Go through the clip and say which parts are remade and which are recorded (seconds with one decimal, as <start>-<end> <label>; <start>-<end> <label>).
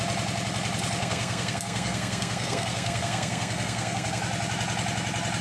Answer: 0.0-1.0 recorded; 1.0-4.2 remade; 4.2-5.4 recorded